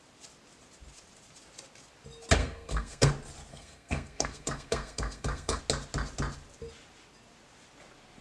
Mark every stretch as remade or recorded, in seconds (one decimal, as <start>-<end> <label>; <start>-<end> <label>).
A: 0.0-2.4 recorded; 2.4-3.1 remade; 3.1-3.5 recorded; 3.5-5.6 remade; 5.6-8.2 recorded